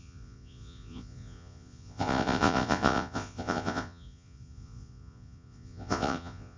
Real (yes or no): no